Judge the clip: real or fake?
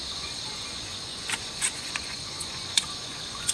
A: fake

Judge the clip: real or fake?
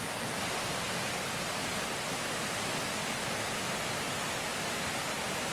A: real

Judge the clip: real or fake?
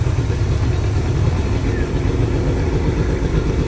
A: real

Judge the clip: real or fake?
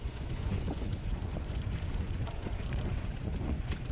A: fake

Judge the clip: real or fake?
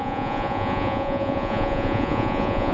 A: fake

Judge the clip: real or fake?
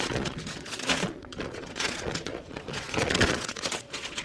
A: fake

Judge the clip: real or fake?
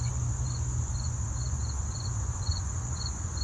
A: fake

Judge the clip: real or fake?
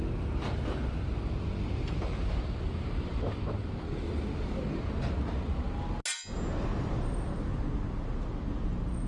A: real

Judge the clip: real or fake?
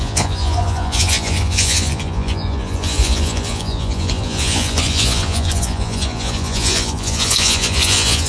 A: fake